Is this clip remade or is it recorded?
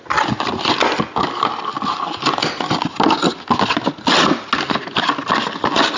recorded